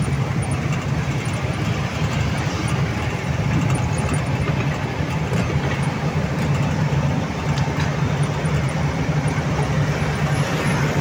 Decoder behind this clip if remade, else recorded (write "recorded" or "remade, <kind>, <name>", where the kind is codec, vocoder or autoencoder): remade, vocoder, BigVGAN v2